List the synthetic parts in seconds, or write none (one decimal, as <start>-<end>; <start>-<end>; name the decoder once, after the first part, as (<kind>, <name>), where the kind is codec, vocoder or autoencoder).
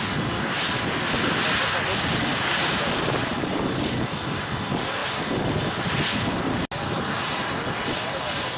2.3-2.9 (codec, DAC)